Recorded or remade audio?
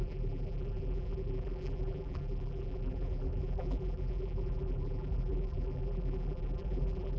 remade